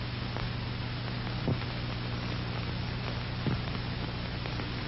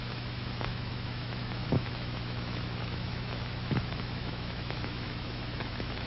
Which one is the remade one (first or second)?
second